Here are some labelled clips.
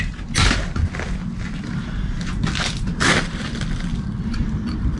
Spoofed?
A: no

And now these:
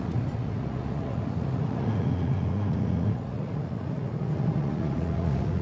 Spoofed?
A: yes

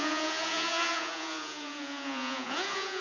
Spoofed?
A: yes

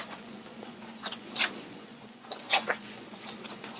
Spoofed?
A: yes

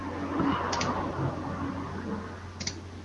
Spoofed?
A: no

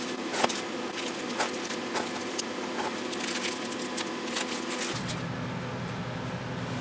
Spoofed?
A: no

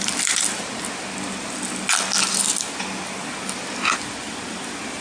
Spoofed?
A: no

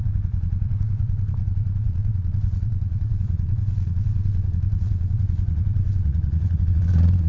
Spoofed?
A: yes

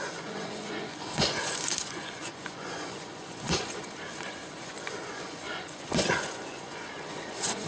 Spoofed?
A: yes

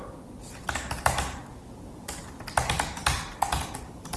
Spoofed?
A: no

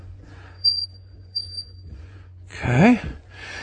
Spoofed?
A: yes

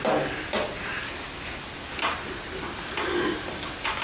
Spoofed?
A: no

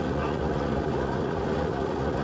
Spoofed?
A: yes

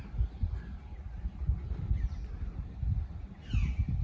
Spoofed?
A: no